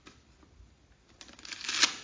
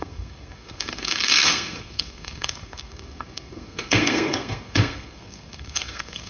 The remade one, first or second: second